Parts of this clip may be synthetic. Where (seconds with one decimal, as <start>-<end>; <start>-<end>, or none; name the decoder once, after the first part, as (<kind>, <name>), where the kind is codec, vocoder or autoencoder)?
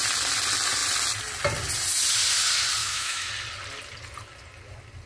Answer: 2.8-3.3 (autoencoder, DAC-VAE)